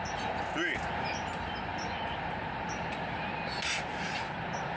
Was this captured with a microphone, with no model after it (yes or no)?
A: yes